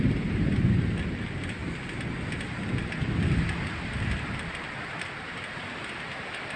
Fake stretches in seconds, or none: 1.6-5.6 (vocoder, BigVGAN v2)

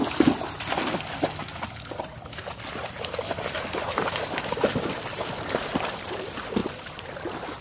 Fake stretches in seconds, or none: none

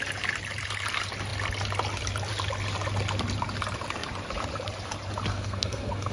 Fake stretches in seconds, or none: 5.3-6.1 (codec, SNAC)

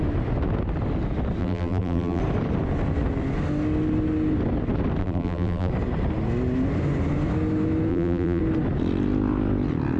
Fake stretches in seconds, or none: 1.4-2.2 (vocoder, BigVGAN v2); 5.0-5.7; 7.9-8.4